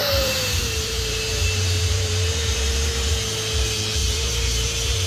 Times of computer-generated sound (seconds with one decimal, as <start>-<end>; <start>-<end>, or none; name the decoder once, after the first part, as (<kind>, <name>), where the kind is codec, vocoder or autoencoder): 0.0-3.1 (vocoder, BigVGAN v2); 4.0-5.1